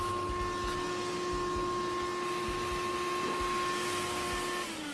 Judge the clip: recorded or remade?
recorded